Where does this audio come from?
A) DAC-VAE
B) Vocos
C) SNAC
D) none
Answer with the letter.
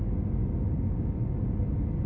D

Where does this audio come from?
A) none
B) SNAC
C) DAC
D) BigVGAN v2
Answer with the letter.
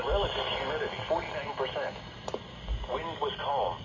A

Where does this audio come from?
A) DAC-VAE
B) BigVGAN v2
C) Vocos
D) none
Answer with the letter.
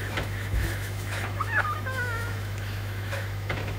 A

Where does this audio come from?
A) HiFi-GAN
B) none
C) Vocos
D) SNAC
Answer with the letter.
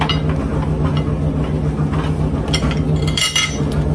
B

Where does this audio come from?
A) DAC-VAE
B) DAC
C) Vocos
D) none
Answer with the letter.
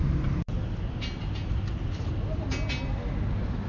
D